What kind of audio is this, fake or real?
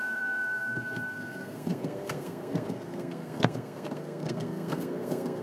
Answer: fake